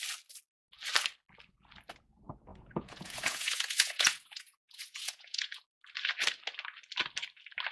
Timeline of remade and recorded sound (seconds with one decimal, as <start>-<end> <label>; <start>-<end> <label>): 0.0-2.5 recorded; 2.5-5.6 remade; 5.6-7.7 recorded